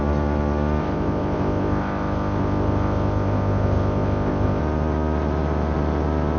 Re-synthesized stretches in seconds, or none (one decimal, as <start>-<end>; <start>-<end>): 0.8-4.6

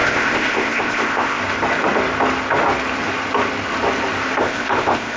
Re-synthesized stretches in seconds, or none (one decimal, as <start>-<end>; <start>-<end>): 0.0-1.4; 4.4-5.2

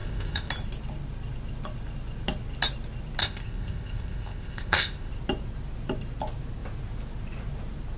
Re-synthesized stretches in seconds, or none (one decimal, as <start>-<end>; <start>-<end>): 0.0-0.5; 3.2-5.1

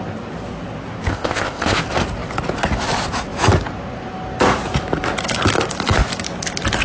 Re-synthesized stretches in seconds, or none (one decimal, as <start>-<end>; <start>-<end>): 1.1-1.8